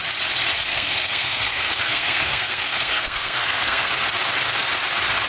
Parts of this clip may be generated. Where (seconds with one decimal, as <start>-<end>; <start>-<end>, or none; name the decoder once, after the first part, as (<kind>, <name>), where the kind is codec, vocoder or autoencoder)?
0.7-3.9 (codec, SNAC)